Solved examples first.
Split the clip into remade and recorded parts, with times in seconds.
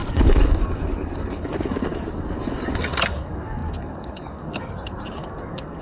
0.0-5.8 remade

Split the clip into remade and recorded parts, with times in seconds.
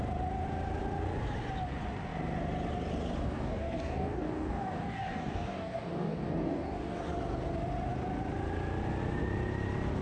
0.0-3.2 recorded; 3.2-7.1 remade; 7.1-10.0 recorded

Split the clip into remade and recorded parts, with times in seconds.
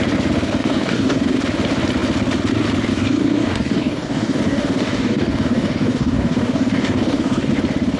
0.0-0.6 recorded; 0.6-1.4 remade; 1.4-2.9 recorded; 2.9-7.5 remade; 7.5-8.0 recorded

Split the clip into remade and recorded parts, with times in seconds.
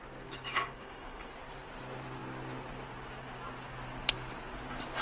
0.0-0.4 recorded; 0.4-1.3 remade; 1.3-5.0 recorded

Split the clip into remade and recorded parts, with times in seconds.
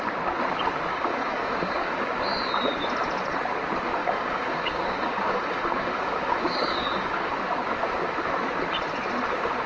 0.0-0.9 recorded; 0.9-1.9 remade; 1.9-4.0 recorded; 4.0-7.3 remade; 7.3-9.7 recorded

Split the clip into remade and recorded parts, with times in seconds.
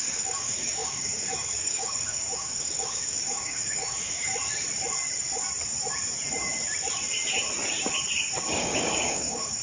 0.0-4.3 remade; 4.3-8.6 recorded; 8.6-9.6 remade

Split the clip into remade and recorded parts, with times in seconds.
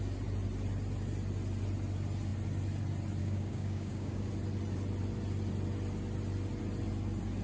0.0-3.2 recorded; 3.2-4.3 remade; 4.3-7.4 recorded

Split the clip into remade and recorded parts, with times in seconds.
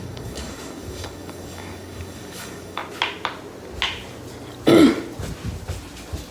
0.0-2.8 remade; 2.8-6.3 recorded